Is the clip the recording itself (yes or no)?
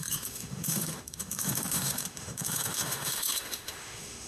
no